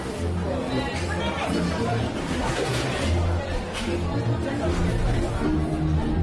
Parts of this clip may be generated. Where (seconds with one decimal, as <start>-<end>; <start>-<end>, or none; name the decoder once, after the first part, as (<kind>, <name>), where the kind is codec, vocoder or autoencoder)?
2.2-2.8 (codec, SNAC)